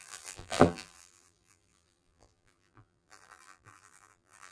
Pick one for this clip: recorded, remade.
remade